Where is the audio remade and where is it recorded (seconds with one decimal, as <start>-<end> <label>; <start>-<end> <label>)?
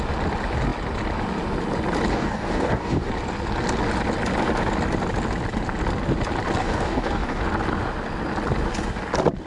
0.0-2.1 recorded; 2.1-3.1 remade; 3.1-6.6 recorded; 6.6-7.4 remade; 7.4-9.5 recorded